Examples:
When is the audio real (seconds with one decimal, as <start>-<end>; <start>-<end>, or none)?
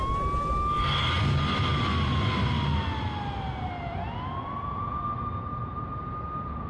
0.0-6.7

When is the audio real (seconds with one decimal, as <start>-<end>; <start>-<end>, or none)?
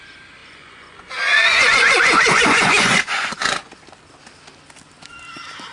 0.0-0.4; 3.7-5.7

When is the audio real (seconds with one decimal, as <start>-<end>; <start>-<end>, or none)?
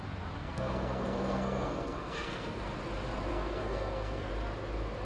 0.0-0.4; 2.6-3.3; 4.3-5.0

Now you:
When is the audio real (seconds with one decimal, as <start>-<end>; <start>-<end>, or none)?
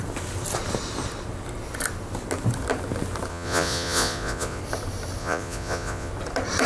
0.0-3.3; 4.6-5.2; 6.1-6.7